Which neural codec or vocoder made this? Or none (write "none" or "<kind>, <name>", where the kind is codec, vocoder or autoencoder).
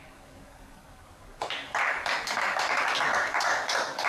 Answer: codec, DAC